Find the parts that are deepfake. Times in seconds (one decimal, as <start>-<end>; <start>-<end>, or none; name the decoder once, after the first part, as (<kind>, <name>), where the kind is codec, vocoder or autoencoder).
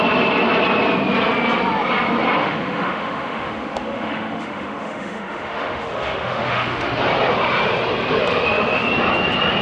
2.4-7.0 (autoencoder, DAC-VAE); 8.3-8.9